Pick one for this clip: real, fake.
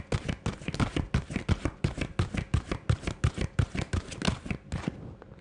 real